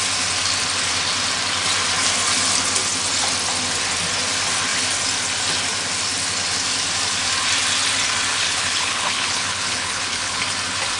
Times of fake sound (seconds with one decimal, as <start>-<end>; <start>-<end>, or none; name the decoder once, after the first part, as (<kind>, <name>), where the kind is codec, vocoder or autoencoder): 8.3-10.4 (codec, HILCodec)